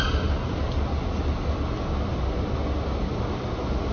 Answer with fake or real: real